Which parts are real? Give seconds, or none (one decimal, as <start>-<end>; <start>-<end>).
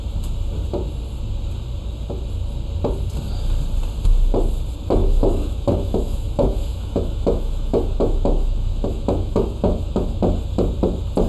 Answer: 0.0-5.0; 10.2-11.3